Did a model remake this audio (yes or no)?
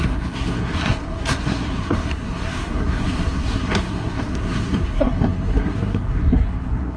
yes